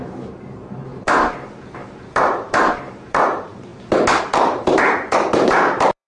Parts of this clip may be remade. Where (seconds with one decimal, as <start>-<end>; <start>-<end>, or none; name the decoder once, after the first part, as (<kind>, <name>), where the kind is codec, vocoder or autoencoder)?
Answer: 0.0-3.7 (vocoder, BigVGAN v2); 4.2-6.1